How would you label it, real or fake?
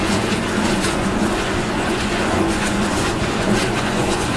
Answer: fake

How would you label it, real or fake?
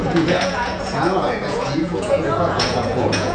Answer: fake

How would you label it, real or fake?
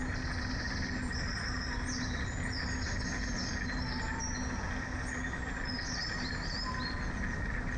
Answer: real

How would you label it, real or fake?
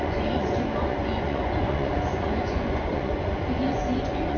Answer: fake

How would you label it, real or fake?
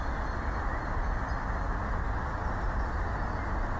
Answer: real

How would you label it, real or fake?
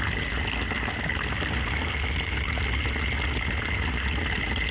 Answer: real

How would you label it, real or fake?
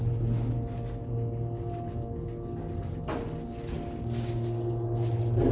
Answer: real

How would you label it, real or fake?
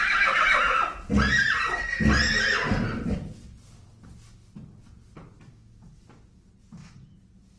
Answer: real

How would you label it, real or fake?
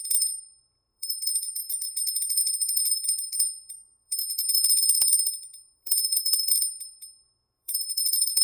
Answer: fake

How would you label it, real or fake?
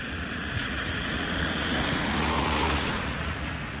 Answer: fake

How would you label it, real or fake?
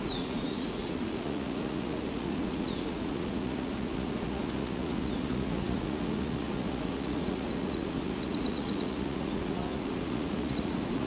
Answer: fake